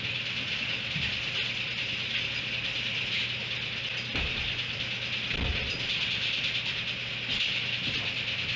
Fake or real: real